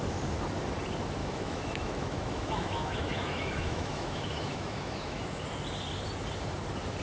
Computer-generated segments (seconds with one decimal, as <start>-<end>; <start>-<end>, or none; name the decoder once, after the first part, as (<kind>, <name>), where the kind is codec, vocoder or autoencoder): 1.2-5.4 (autoencoder, DAC-VAE)